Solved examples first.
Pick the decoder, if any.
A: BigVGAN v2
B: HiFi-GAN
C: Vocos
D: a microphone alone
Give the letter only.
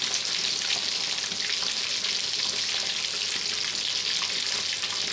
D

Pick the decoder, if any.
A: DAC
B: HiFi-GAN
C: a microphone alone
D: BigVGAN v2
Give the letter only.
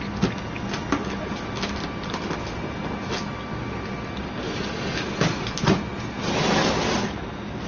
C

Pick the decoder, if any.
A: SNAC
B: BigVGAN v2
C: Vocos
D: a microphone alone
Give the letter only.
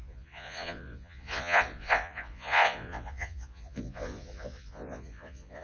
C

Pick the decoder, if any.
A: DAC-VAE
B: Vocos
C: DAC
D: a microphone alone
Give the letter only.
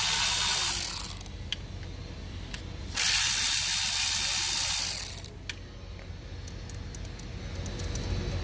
D